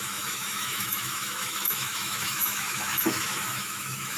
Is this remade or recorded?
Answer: remade